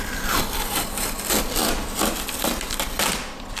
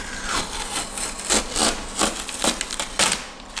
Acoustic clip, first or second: second